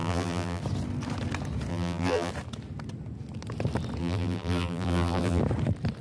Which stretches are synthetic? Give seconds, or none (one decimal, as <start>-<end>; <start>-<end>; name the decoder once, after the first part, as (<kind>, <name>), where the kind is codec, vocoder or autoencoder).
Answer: 0.0-0.6 (vocoder, BigVGAN v2); 1.7-2.3; 4.0-5.4